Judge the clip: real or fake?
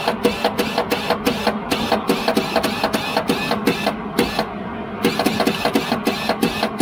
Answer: real